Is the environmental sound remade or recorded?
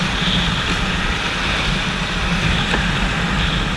recorded